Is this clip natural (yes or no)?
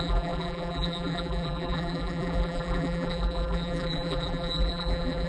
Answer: no